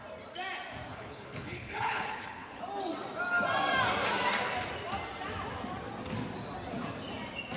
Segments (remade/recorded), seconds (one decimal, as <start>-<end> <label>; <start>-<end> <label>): 0.0-0.9 recorded; 0.9-2.6 remade; 2.6-7.6 recorded